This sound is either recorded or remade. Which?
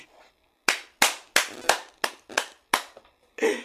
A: recorded